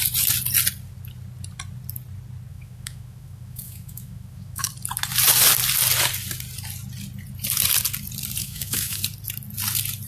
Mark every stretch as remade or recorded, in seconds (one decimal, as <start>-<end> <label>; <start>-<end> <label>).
0.0-2.5 recorded; 2.5-4.7 remade; 4.7-8.4 recorded; 8.4-9.0 remade; 9.0-10.1 recorded